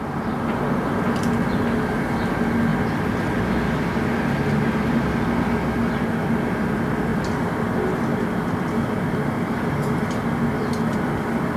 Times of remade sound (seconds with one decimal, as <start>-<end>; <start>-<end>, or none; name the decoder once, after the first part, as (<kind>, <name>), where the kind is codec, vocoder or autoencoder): none